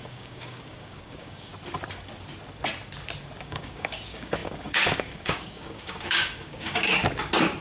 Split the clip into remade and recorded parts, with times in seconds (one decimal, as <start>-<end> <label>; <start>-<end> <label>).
0.0-1.5 remade; 1.5-3.4 recorded; 3.4-7.0 remade; 7.0-7.6 recorded

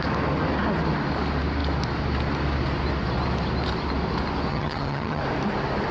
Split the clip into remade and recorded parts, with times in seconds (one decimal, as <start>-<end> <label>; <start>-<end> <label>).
0.0-4.5 recorded; 4.5-5.2 remade; 5.2-5.9 recorded